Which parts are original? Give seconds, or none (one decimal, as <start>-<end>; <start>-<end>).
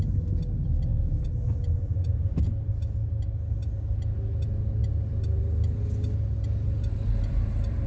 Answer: 0.0-7.9